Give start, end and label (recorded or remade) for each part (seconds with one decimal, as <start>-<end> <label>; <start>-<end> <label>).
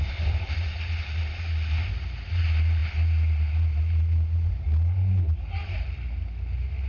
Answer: 0.0-6.9 recorded